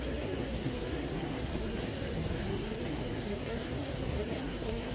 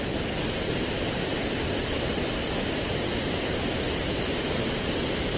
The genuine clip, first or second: second